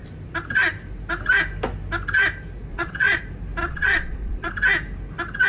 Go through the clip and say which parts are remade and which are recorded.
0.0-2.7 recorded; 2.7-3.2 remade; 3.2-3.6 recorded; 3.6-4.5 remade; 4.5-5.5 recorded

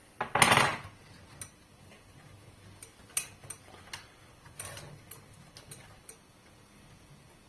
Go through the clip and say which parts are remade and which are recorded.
0.0-7.5 recorded

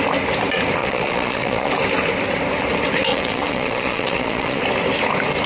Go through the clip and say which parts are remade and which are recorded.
0.0-0.8 recorded; 0.8-1.7 remade; 1.7-3.1 recorded; 3.1-4.6 remade; 4.6-5.5 recorded